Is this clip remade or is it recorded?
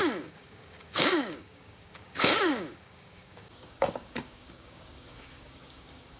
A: remade